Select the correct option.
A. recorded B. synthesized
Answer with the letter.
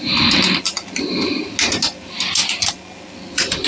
A